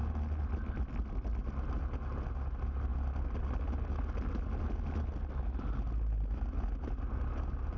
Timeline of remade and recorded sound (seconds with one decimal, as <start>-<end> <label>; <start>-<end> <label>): 0.0-7.8 recorded